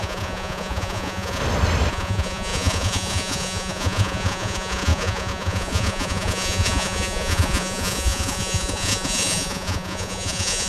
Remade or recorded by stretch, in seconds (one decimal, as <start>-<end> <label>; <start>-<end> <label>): 0.0-1.4 remade; 1.4-1.9 recorded; 1.9-10.7 remade